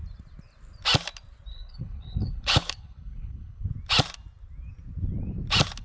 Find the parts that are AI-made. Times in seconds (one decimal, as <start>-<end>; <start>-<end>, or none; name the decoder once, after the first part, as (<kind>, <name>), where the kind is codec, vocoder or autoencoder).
1.5-3.7 (codec, HILCodec)